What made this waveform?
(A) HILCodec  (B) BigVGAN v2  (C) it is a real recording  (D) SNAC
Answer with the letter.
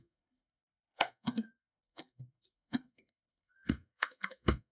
D